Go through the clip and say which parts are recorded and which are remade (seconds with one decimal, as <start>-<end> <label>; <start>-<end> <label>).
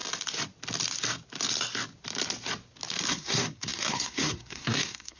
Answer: 0.0-3.1 recorded; 3.1-5.2 remade